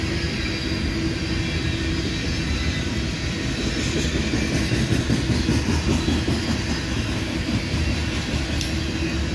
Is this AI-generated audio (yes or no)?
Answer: no